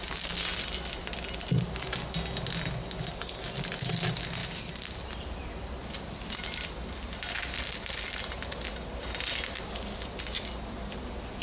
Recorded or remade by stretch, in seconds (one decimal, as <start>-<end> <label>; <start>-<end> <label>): 0.0-11.4 recorded